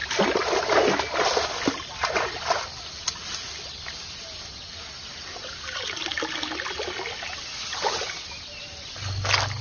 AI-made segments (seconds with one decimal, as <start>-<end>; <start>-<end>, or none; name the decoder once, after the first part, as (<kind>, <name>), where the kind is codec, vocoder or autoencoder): 5.1-6.0 (vocoder, BigVGAN v2)